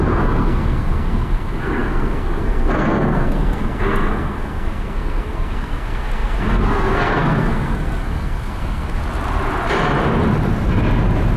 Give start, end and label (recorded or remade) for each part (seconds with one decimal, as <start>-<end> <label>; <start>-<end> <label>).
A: 0.0-9.0 remade; 9.0-11.4 recorded